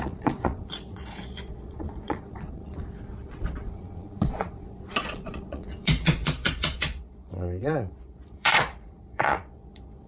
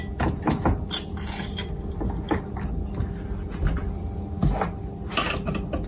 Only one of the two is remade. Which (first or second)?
first